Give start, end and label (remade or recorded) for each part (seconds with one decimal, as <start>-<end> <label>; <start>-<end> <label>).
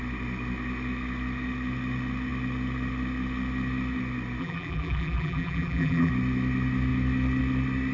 0.0-4.4 recorded; 4.4-6.1 remade; 6.1-7.9 recorded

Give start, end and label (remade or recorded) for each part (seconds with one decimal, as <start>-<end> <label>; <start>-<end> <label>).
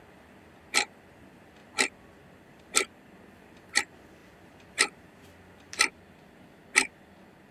0.0-6.6 remade; 6.6-7.5 recorded